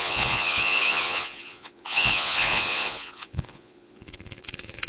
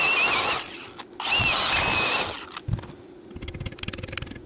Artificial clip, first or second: first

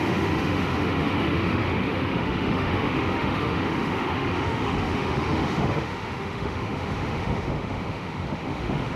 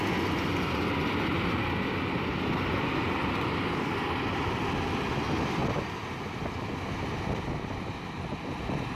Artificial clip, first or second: first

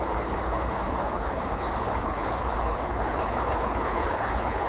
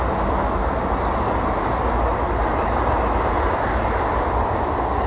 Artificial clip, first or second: first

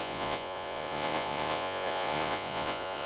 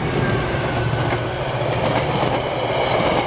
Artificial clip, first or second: first